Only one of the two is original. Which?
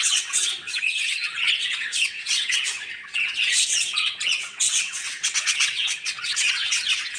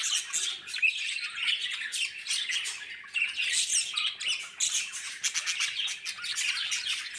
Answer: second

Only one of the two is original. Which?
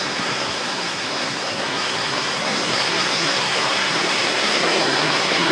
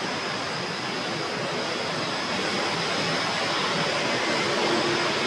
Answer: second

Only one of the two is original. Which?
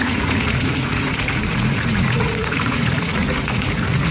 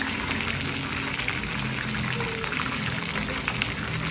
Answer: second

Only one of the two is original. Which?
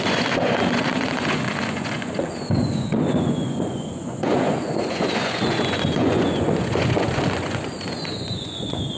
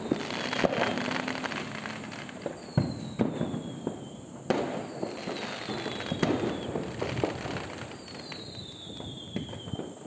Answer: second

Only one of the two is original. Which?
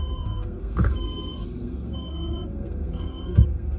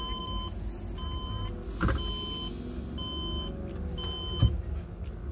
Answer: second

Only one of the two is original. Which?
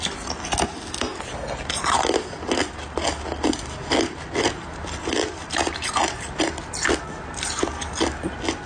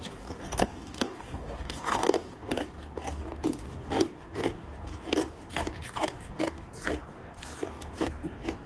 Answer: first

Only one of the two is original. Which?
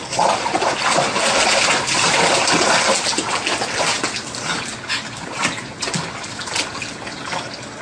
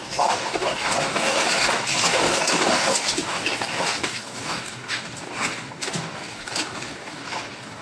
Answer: first